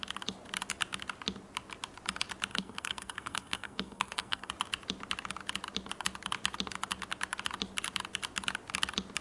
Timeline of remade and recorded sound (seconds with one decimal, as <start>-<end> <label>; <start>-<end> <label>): 0.0-2.5 recorded; 2.5-4.5 remade; 4.5-9.2 recorded